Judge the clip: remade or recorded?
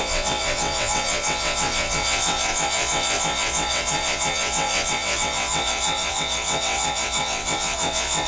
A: remade